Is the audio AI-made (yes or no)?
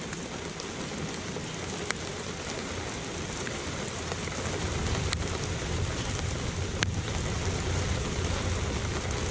no